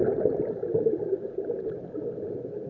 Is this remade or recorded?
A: remade